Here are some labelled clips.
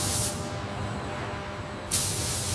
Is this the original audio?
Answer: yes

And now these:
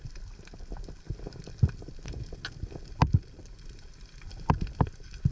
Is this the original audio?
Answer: yes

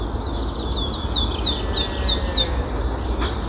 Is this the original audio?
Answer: yes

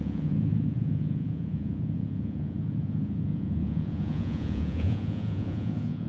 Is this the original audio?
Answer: no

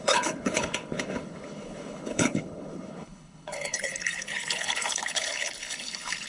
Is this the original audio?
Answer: no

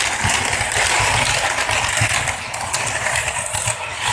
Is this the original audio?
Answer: yes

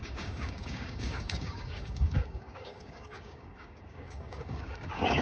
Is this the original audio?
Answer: no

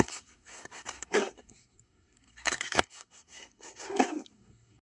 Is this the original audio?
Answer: no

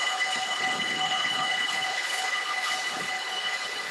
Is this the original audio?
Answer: no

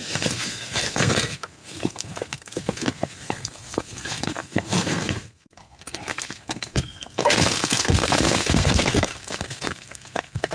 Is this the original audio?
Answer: no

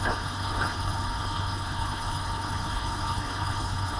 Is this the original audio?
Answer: no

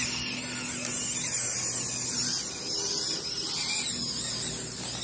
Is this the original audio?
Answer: yes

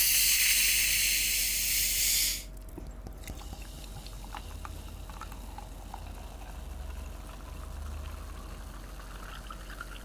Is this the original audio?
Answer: yes